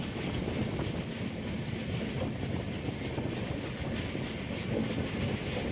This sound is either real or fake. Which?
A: real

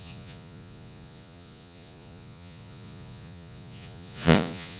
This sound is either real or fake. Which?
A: fake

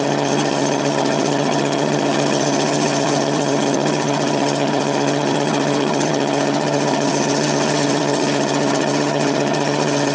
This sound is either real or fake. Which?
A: fake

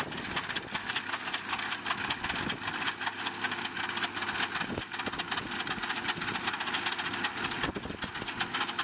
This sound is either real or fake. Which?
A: real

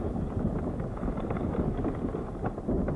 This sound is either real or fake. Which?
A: real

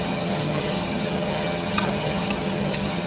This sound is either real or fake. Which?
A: fake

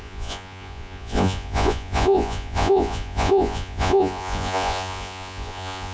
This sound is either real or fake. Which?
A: fake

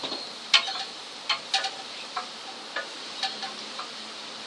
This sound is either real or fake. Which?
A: fake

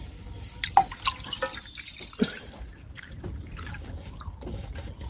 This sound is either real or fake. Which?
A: real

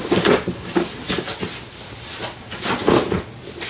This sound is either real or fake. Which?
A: real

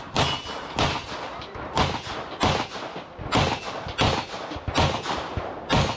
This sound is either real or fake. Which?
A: real